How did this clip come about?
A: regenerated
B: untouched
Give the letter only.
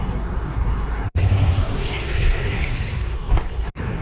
A